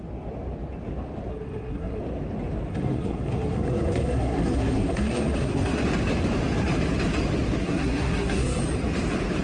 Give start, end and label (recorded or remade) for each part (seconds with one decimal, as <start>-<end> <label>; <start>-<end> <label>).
0.0-1.3 recorded; 1.3-2.0 remade; 2.0-2.7 recorded; 2.7-5.8 remade; 5.8-7.6 recorded; 7.6-8.6 remade; 8.6-9.4 recorded